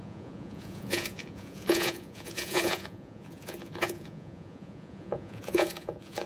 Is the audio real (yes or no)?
no